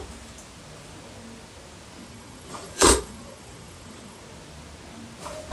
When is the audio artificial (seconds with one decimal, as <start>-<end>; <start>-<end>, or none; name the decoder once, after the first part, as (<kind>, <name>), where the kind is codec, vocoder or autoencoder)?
2.0-4.2 (vocoder, Vocos)